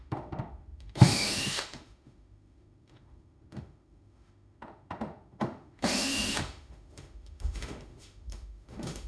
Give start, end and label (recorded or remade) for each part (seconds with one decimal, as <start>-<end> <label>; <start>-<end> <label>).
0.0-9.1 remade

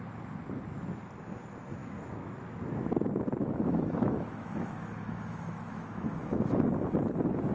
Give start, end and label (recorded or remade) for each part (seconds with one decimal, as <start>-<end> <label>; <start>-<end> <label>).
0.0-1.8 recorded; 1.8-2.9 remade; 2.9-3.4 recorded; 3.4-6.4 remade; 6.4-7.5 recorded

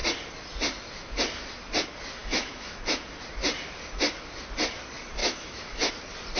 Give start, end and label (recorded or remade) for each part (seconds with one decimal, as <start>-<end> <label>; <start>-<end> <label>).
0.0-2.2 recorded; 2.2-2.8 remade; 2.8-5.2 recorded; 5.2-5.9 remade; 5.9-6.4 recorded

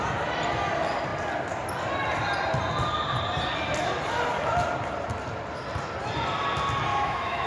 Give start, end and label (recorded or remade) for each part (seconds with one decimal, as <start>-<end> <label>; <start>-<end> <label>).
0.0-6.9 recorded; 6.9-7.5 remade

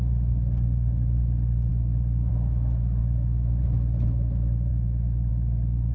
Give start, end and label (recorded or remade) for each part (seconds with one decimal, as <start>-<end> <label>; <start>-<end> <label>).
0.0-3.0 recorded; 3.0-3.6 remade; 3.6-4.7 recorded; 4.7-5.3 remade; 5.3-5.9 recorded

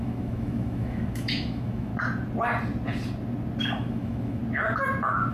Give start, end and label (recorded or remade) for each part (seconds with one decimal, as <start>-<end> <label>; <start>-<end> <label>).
0.0-1.9 remade; 1.9-3.6 recorded; 3.6-4.4 remade; 4.4-5.3 recorded

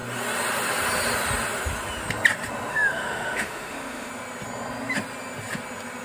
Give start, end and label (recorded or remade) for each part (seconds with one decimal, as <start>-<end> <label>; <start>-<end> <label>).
0.0-2.7 recorded; 2.7-4.1 remade; 4.1-6.0 recorded

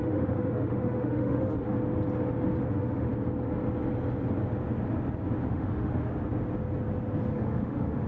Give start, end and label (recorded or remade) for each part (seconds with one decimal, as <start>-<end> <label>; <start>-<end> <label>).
0.0-1.7 remade; 1.7-2.6 recorded; 2.6-3.1 remade; 3.1-5.5 recorded; 5.5-6.1 remade; 6.1-7.3 recorded; 7.3-8.1 remade